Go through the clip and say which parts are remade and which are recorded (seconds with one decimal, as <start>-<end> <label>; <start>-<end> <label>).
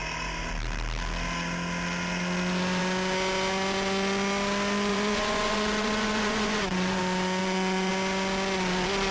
0.0-4.9 recorded; 4.9-7.0 remade; 7.0-7.4 recorded; 7.4-7.9 remade; 7.9-9.1 recorded